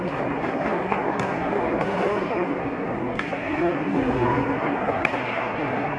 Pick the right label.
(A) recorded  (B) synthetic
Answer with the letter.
B